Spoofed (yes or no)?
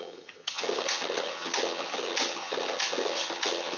yes